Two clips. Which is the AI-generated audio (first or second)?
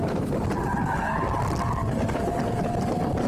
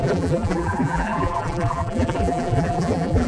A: second